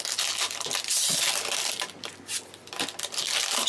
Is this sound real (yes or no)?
yes